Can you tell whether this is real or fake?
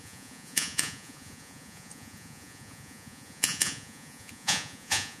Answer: fake